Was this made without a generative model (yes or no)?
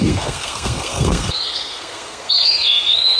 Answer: no